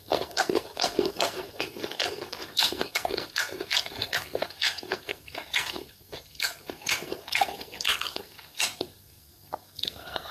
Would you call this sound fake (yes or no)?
yes